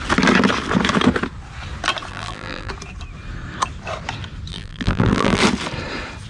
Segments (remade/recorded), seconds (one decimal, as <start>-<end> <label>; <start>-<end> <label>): 0.0-2.1 recorded; 2.1-2.7 remade; 2.7-4.5 recorded; 4.5-5.4 remade; 5.4-6.3 recorded